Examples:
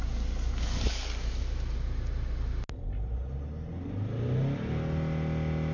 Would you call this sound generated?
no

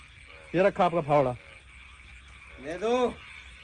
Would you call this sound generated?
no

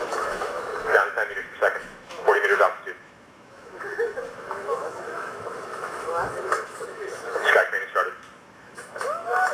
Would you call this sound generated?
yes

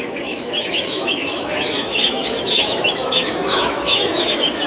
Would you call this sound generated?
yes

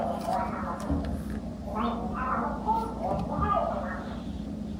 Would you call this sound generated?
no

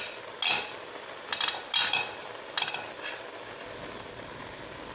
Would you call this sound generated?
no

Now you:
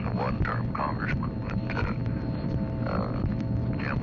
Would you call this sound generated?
no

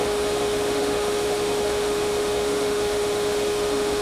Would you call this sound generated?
yes